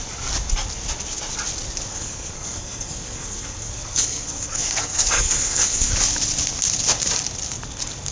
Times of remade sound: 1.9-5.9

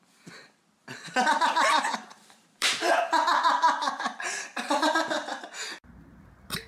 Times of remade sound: 0.8-4.1; 4.5-5.9